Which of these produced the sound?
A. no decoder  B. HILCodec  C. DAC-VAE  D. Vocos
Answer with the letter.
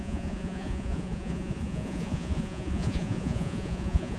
D